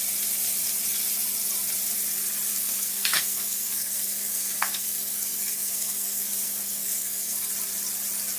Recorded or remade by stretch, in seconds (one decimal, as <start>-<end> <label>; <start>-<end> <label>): 0.0-2.5 recorded; 2.5-7.5 remade; 7.5-8.4 recorded